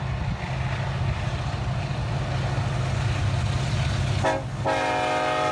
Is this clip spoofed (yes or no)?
no